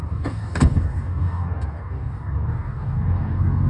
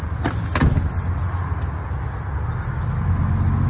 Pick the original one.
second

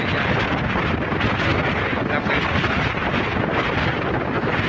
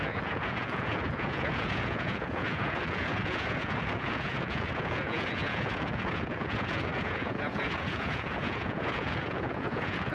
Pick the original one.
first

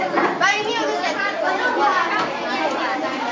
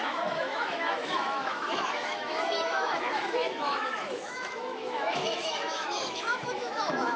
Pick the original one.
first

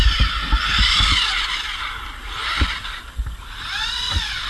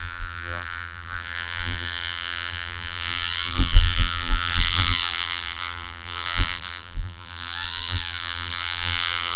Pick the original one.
first